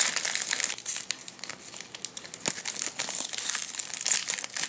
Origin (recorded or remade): recorded